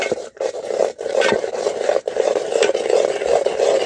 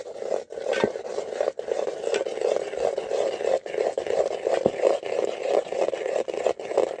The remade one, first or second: first